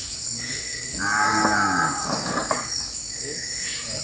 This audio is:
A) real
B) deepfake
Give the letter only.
B